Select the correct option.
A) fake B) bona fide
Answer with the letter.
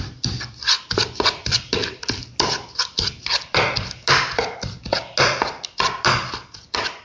B